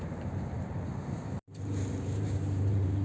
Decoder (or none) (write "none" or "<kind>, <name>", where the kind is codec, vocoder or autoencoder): vocoder, BigVGAN v2